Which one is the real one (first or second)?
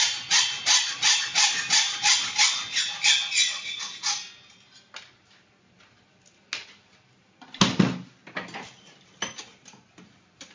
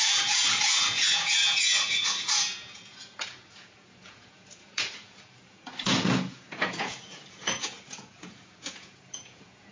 first